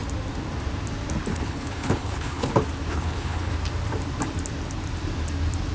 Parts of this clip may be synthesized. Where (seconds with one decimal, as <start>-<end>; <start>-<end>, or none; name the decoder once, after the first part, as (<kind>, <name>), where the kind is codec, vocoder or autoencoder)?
1.3-2.5 (codec, HILCodec); 2.9-3.5

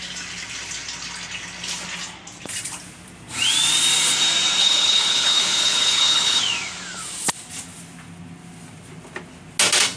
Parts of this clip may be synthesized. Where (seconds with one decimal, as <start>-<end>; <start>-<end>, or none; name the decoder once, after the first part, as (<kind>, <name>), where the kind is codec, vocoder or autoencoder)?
4.6-6.4 (codec, HILCodec)

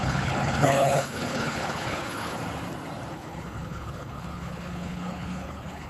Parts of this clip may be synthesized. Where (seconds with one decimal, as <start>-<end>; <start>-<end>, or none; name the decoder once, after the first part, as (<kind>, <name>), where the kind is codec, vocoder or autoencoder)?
0.0-2.4 (codec, HILCodec); 3.1-5.9